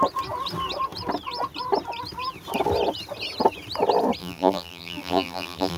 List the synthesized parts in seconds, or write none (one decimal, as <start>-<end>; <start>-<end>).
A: 4.2-5.8